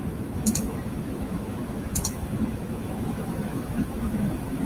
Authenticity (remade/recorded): remade